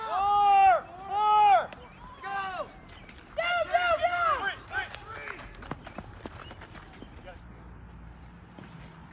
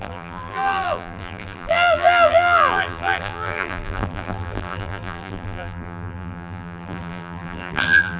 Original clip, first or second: first